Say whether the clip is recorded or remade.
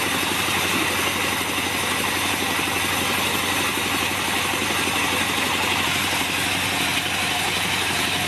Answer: recorded